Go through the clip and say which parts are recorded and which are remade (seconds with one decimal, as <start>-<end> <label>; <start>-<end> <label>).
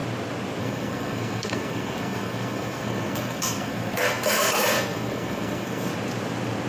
0.0-0.6 recorded; 0.6-5.9 remade; 5.9-6.7 recorded